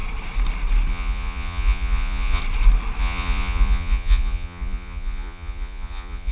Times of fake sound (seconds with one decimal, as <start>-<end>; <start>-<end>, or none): 0.9-2.4; 3.0-6.3